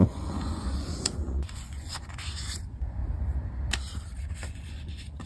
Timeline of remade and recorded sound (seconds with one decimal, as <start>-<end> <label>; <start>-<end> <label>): 0.0-3.0 remade; 3.0-4.3 recorded; 4.3-5.3 remade